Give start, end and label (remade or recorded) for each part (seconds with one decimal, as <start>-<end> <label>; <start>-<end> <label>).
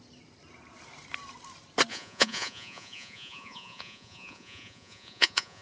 0.0-1.9 recorded; 1.9-5.6 remade